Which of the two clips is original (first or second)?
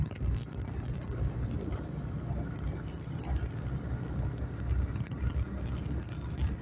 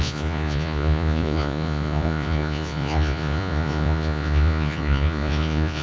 first